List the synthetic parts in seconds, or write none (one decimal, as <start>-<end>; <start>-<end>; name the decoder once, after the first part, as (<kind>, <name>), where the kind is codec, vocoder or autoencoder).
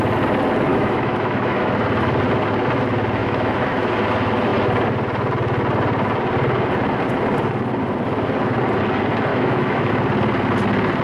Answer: 0.7-1.7 (autoencoder, DAC-VAE); 3.2-3.9; 9.3-9.9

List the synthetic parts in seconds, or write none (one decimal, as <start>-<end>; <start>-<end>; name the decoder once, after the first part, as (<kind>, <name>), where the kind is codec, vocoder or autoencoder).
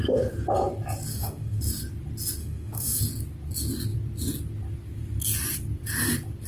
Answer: 1.1-1.6 (autoencoder, DAC-VAE); 2.4-3.0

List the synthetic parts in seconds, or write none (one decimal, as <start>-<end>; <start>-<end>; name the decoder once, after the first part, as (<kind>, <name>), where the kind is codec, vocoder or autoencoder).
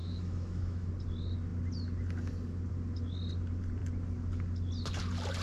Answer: 0.0-0.9 (autoencoder, DAC-VAE)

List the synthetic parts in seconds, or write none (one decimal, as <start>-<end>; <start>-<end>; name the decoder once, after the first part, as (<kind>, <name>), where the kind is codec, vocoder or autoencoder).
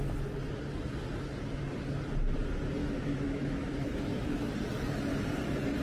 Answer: 2.8-4.5 (autoencoder, DAC-VAE)